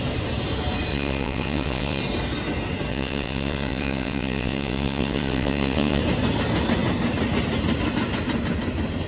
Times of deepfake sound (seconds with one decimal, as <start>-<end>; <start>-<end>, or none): 0.9-2.0; 2.9-6.0